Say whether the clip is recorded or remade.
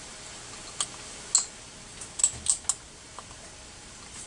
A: recorded